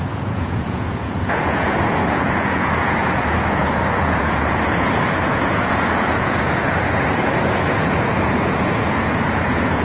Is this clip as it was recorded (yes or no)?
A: no